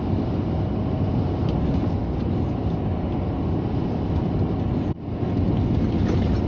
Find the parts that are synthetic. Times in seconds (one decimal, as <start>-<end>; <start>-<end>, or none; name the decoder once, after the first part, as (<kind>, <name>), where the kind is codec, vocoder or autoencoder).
none